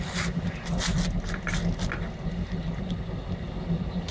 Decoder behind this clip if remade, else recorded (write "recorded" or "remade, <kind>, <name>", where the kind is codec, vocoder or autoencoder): recorded